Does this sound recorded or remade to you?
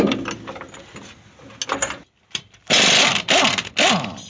recorded